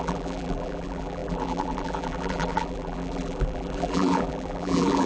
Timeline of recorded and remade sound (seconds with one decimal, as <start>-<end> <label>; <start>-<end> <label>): 0.0-5.1 remade